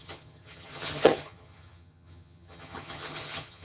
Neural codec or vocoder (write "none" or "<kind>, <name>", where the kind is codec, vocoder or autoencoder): vocoder, HiFi-GAN